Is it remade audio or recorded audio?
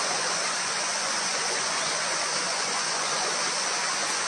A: remade